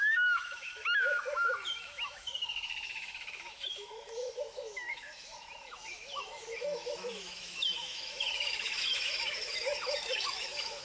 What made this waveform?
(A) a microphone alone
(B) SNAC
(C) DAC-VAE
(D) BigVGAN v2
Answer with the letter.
C